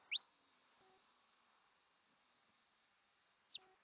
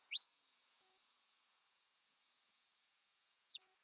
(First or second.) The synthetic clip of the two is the second